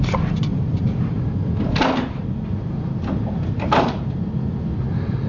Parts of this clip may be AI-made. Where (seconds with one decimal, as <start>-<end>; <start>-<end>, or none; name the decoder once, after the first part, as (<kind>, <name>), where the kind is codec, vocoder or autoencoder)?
0.0-5.3 (vocoder, BigVGAN v2)